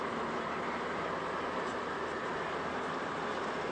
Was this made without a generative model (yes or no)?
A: yes